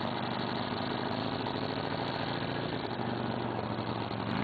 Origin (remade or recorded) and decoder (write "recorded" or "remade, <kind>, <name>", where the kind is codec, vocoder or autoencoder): recorded